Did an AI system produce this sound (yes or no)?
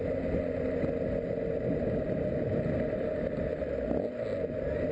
no